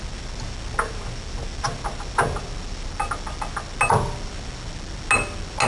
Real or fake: real